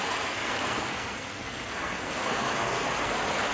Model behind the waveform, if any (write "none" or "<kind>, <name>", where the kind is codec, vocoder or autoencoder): codec, SNAC